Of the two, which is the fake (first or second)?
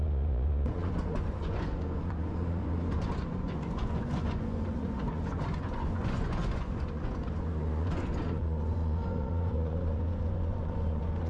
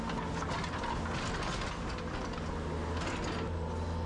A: first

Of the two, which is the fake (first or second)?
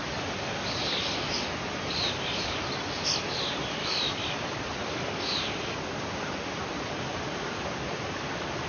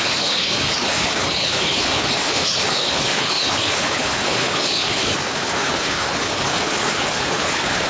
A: second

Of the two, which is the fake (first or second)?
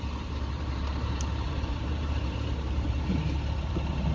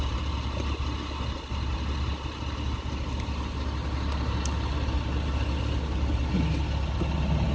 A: first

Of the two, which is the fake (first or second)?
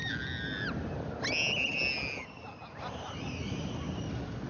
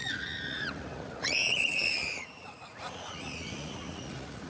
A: second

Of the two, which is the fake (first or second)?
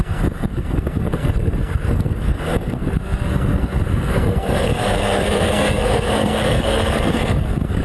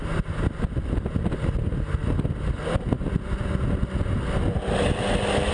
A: first